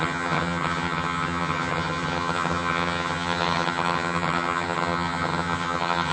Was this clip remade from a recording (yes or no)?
yes